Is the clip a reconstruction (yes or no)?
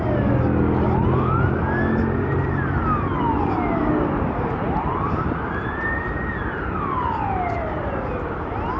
no